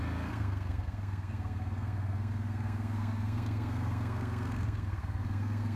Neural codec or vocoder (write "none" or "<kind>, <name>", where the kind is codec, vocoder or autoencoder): codec, SNAC